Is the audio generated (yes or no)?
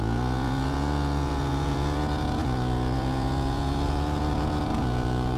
yes